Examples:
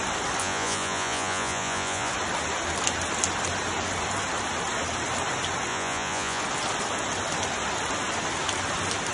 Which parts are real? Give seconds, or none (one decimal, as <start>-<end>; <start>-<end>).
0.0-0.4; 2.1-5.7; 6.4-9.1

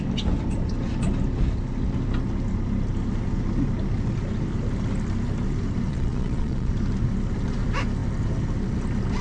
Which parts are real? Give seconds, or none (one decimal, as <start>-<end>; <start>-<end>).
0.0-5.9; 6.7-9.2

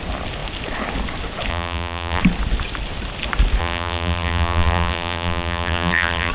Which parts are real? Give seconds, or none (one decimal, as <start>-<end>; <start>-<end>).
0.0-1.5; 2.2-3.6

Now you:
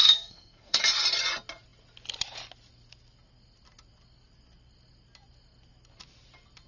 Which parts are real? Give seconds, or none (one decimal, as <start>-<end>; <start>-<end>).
0.8-6.7

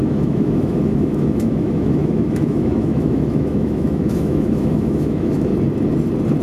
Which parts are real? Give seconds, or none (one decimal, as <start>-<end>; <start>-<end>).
5.5-6.4

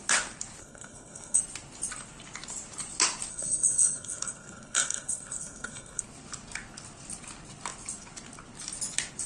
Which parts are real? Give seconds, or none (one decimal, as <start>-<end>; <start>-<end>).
0.0-0.6; 1.4-3.3; 6.0-9.3

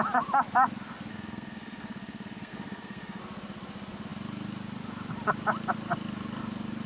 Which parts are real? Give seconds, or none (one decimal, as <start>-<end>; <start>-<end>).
0.0-1.1; 3.2-6.9